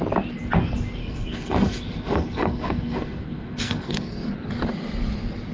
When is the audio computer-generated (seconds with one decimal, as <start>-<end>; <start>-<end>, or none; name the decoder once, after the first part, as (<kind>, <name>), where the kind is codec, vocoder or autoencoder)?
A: 1.0-4.3 (codec, SNAC)